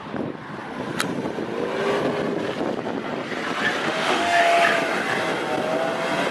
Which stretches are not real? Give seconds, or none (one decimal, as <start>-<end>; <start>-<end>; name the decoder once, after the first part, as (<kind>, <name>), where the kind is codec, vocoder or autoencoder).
3.8-4.4 (autoencoder, DAC-VAE)